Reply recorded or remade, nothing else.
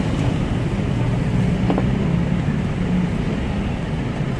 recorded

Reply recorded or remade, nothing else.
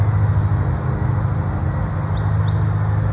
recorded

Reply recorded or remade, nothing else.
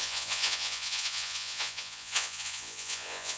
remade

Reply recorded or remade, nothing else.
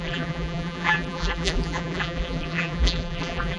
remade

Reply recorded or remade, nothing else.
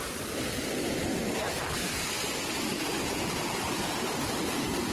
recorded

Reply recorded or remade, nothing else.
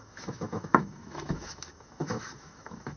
remade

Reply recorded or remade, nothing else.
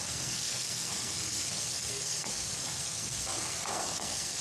remade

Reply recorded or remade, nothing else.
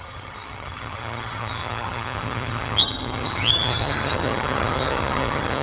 remade